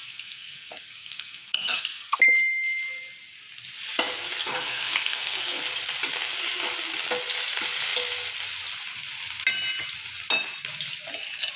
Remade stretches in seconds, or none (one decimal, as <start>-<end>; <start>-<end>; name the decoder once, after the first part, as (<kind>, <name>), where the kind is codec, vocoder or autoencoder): 0.0-2.2 (codec, SNAC); 4.4-5.6